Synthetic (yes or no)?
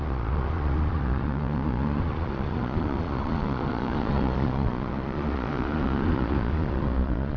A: yes